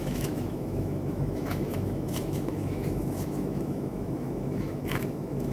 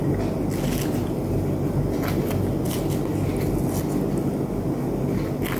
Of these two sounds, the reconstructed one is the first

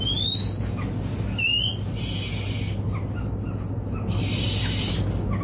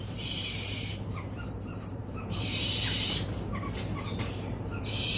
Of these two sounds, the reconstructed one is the second